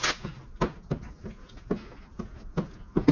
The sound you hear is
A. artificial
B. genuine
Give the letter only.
B